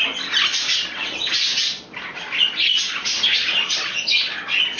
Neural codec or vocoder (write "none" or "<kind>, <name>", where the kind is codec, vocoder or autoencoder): none